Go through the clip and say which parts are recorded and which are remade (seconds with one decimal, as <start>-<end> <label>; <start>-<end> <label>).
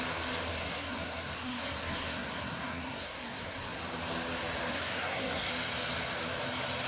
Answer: 0.0-0.5 recorded; 0.5-3.8 remade; 3.8-4.7 recorded; 4.7-5.5 remade; 5.5-6.9 recorded